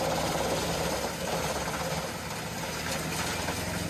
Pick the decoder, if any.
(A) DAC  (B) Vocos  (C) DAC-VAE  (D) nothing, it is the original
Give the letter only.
D